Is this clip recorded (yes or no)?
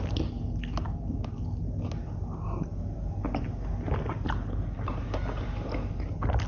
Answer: yes